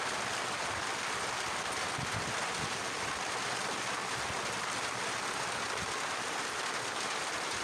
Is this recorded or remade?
recorded